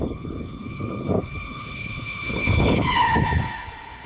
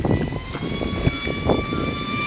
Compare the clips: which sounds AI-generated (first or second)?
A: first